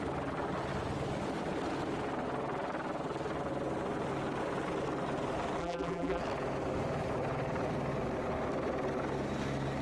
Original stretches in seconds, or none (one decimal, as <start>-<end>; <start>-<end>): 0.0-5.6; 6.2-9.8